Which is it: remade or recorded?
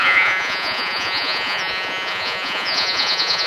remade